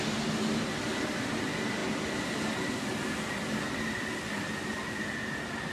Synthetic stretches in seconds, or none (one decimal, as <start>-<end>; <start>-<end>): none